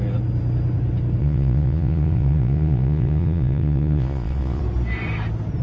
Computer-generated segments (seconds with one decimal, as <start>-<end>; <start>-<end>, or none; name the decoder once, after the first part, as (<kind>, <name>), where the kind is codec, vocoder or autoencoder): 1.2-4.6 (vocoder, Vocos)